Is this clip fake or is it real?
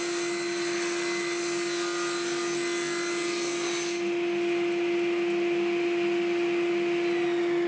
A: real